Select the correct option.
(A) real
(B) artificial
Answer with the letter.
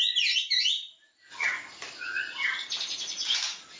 A